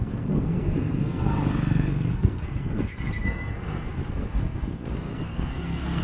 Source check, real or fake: fake